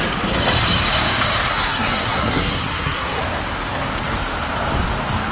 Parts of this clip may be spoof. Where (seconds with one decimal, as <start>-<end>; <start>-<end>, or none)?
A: 1.5-3.2